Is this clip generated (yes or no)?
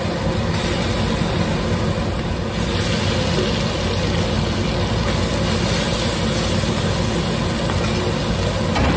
no